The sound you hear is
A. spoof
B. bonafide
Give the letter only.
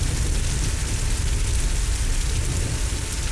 B